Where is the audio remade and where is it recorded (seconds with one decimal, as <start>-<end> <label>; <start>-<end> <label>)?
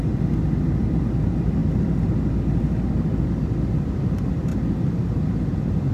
0.0-5.9 recorded